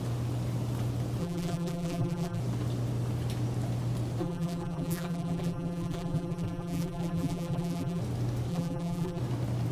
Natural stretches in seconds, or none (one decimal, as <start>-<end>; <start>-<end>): 0.0-1.2; 2.4-4.2; 8.0-8.5; 9.2-9.7

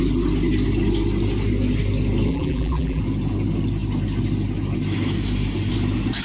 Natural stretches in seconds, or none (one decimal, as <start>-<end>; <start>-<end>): 0.0-2.3; 3.0-6.2

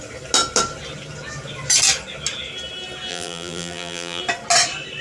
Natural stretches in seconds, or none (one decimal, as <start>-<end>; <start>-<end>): 0.0-3.1; 4.2-5.0

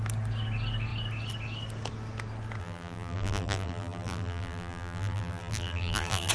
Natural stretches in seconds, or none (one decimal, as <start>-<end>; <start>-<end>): 0.0-2.6